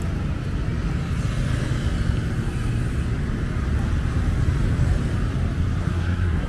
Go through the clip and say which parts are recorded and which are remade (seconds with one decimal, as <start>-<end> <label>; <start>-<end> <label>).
0.0-5.8 recorded; 5.8-6.5 remade